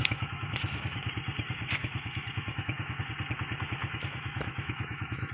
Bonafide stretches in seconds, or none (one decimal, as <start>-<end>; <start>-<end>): 1.1-1.8; 3.0-3.8

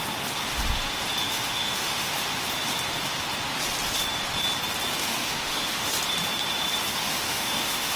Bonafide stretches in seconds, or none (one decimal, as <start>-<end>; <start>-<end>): 0.0-1.2; 2.1-5.1; 5.9-7.0

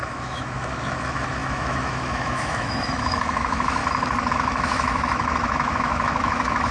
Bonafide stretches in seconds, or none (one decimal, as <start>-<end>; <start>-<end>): 3.8-4.3

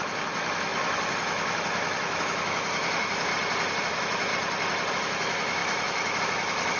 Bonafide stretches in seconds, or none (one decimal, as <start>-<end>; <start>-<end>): 3.3-3.8; 4.3-4.9

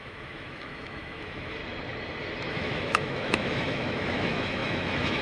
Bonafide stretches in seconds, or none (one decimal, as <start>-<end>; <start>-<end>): 1.6-2.5

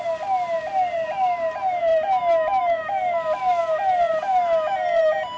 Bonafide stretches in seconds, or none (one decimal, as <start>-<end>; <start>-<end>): 0.0-5.4

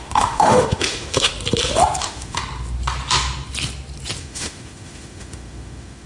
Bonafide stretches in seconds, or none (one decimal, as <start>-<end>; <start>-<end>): 1.3-2.0; 2.4-4.2

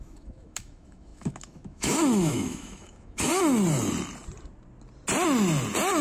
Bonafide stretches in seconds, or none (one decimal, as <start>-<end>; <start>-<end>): 3.3-6.0